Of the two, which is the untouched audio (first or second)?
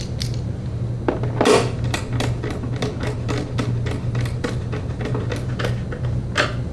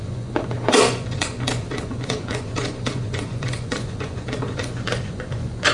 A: first